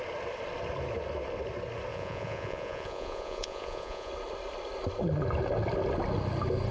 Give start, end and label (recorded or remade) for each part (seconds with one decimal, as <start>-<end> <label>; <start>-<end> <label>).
0.0-1.9 recorded; 1.9-4.1 remade; 4.1-6.7 recorded